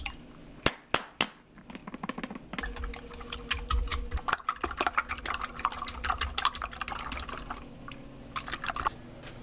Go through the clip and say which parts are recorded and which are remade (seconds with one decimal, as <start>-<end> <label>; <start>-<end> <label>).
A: 0.0-9.4 recorded